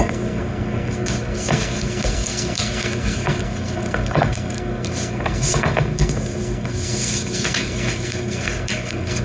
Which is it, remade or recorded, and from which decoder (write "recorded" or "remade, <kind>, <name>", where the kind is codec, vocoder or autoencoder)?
remade, codec, SNAC